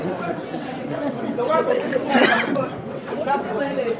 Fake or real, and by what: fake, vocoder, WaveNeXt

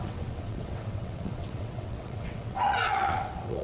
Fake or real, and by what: fake, vocoder, WaveNeXt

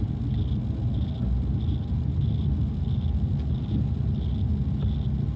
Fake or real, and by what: real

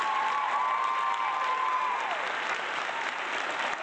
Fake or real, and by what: real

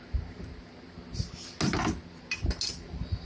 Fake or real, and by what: real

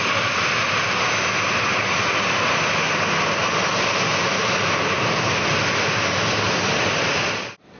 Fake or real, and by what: real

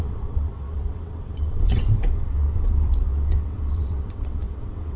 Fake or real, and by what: fake, vocoder, WaveNeXt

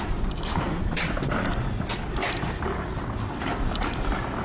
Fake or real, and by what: real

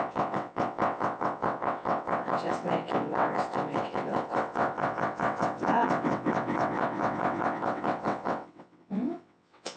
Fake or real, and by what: fake, vocoder, WaveNeXt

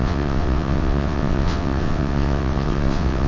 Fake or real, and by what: fake, vocoder, WaveNeXt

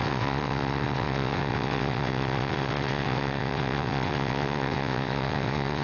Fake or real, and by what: fake, vocoder, WaveNeXt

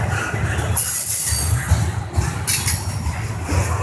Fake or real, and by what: real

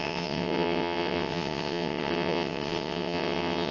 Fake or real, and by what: fake, vocoder, WaveNeXt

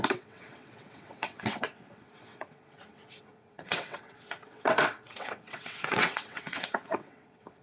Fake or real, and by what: fake, vocoder, WaveNeXt